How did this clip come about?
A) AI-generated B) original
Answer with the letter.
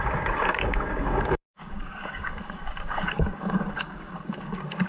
A